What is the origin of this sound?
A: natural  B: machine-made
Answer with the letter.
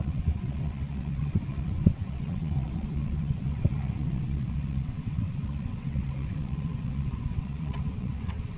B